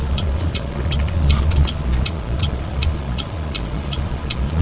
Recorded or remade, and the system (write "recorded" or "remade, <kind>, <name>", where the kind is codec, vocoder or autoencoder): remade, vocoder, Vocos